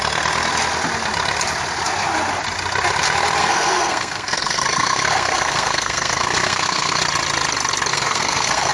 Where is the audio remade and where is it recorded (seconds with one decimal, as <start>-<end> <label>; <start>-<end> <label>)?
0.0-3.4 recorded; 3.4-7.0 remade; 7.0-7.9 recorded; 7.9-8.7 remade